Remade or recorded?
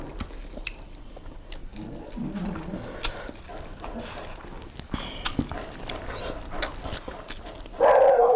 recorded